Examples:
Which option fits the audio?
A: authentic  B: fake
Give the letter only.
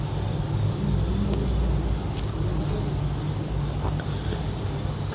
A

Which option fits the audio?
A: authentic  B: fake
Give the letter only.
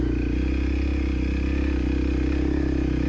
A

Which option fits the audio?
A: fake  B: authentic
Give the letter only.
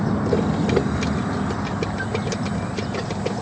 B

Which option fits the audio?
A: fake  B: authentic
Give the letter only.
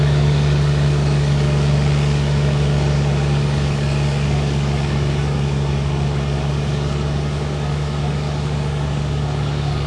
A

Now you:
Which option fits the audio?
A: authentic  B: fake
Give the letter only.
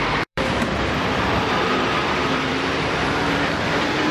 B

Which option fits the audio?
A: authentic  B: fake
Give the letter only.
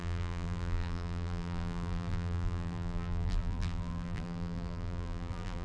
B